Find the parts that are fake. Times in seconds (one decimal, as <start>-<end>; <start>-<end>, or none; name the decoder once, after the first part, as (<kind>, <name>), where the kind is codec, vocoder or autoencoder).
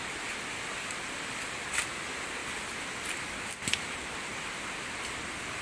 none